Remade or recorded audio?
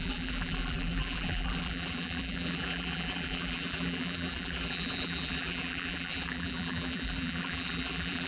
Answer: remade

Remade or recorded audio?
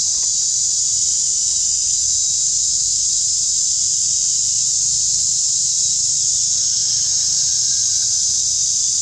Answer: recorded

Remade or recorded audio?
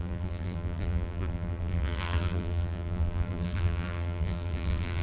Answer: remade